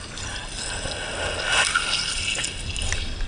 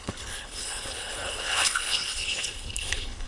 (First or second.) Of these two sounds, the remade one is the second